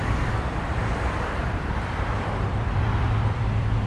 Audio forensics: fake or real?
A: fake